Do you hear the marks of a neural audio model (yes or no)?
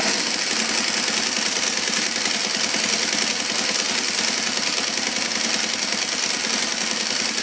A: no